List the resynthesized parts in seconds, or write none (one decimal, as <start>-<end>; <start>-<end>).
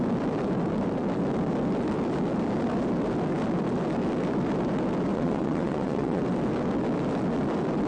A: 5.1-6.2